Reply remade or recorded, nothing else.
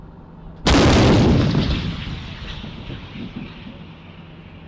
recorded